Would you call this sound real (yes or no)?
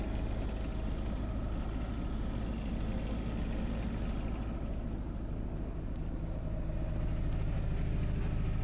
yes